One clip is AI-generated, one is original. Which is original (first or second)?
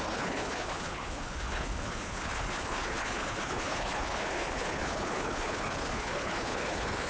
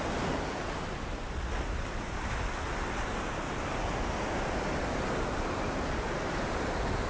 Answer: second